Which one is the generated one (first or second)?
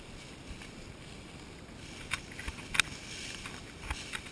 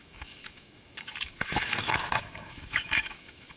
second